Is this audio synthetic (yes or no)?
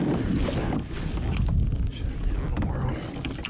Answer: no